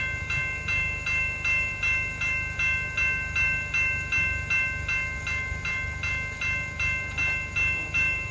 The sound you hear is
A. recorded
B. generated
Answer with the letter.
A